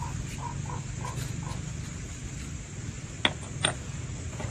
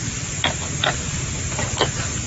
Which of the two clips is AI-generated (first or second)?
second